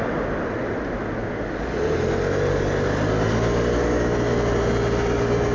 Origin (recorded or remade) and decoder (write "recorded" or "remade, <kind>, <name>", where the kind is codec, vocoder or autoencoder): recorded